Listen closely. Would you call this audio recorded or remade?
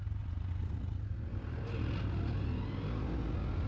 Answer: recorded